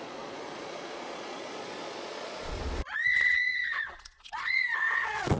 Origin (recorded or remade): remade